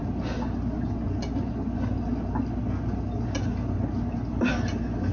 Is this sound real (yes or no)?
yes